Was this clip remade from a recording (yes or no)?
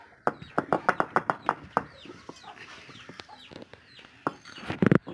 yes